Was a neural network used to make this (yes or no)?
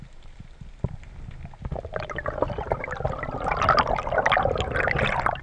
no